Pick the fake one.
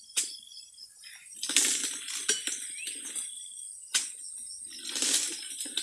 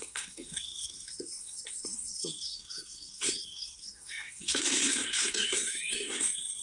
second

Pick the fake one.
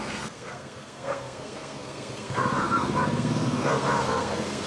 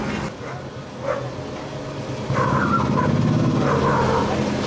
first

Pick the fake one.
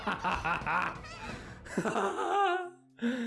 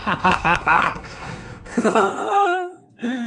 second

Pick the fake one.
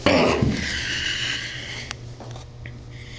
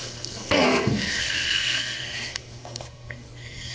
second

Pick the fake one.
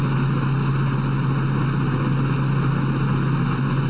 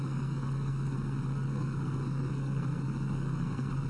second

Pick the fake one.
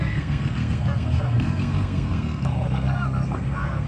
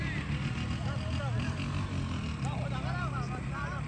first